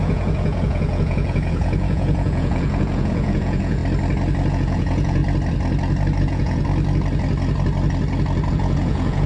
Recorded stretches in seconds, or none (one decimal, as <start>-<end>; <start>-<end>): 3.8-4.5; 5.2-6.2; 6.7-8.5